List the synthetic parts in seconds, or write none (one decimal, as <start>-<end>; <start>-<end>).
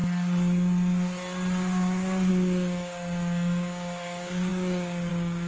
2.3-5.5